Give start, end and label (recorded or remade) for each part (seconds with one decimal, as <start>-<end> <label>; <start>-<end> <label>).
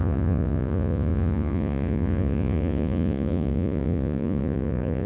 0.0-5.1 remade